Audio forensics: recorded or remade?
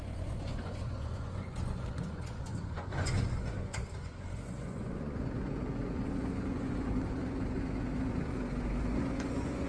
remade